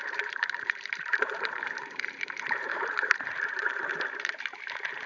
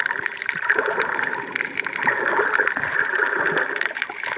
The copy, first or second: first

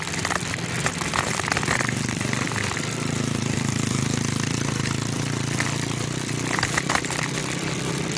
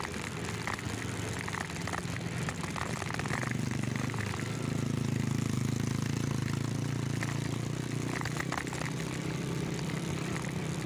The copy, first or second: first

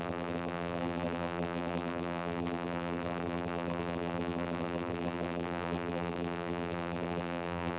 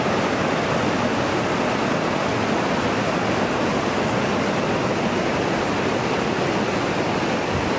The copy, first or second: first